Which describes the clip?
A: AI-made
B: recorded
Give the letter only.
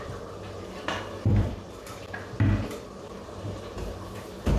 A